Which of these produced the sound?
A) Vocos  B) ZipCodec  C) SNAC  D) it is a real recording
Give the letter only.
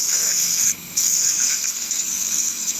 C